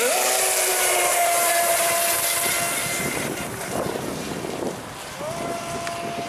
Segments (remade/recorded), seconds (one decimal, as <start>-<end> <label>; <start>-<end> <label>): 0.0-0.7 recorded; 0.7-1.9 remade; 1.9-2.8 recorded; 2.8-4.0 remade; 4.0-6.3 recorded